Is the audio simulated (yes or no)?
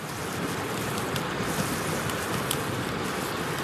no